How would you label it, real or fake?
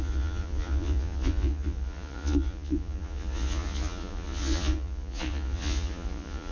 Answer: fake